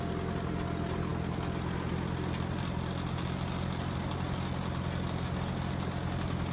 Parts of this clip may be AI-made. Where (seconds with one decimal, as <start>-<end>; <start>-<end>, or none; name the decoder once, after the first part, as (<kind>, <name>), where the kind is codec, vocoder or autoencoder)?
none